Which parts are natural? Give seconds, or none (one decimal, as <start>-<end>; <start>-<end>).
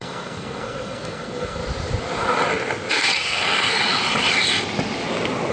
1.6-2.9; 3.8-5.5